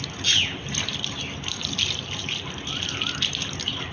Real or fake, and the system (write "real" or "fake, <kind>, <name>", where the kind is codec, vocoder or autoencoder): real